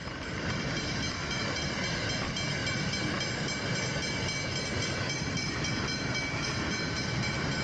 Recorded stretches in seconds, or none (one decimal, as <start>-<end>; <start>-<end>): 0.0-7.6